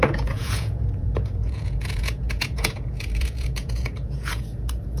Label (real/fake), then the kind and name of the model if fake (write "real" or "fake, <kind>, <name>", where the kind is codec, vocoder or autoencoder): fake, vocoder, Vocos